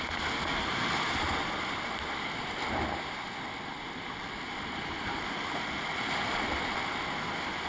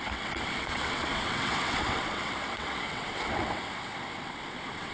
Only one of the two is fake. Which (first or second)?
second